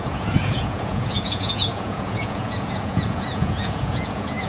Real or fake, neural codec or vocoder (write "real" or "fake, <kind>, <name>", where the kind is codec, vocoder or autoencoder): fake, vocoder, Vocos